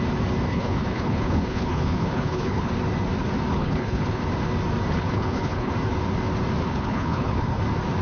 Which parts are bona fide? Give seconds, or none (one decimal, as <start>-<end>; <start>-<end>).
0.0-0.5; 2.7-3.5; 4.2-4.9; 5.7-6.6; 7.6-8.0